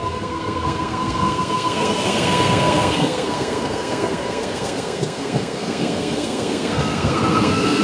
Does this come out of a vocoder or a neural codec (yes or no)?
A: yes